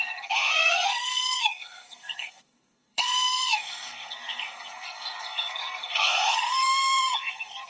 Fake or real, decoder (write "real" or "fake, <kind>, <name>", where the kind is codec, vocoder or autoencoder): fake, codec, SNAC